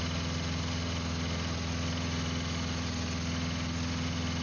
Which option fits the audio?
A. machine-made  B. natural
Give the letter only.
B